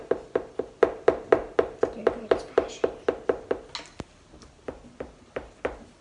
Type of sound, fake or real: real